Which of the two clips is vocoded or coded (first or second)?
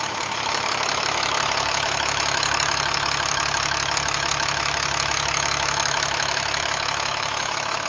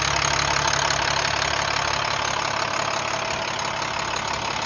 first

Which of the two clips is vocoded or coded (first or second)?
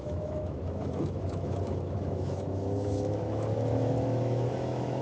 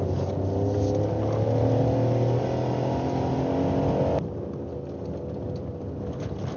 first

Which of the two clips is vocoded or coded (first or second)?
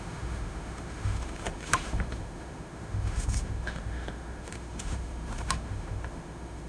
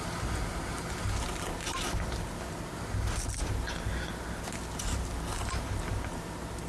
first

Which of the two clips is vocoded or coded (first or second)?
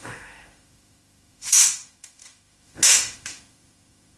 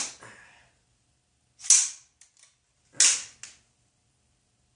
first